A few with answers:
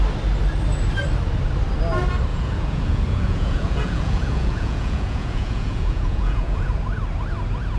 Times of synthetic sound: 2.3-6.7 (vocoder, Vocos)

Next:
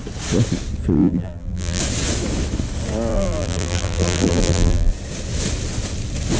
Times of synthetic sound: 1.0-1.8 (vocoder, BigVGAN v2); 3.1-4.9

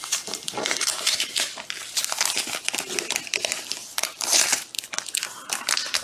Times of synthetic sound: 0.0-1.3 (vocoder, BigVGAN v2); 3.8-4.7

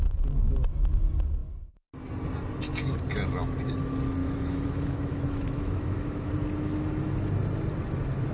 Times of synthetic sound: 4.2-6.3 (autoencoder, DAC-VAE)

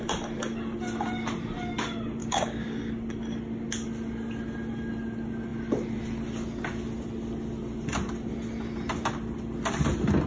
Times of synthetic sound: 2.2-2.9 (codec, DAC)

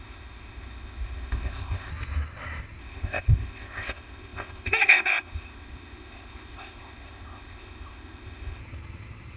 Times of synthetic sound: 0.0-1.9 (codec, ZipCodec); 2.8-8.6